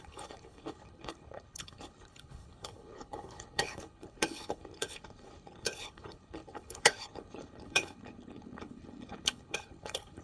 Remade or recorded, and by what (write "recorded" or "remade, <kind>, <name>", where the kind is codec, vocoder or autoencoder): remade, codec, HILCodec